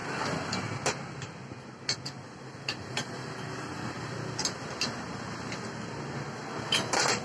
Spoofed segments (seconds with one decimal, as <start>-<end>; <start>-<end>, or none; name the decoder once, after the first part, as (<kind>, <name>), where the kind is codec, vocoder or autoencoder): none